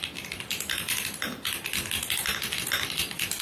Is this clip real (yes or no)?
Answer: yes